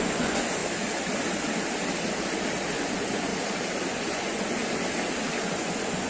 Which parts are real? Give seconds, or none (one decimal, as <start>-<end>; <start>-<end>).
0.6-2.7; 3.3-3.9; 4.6-5.4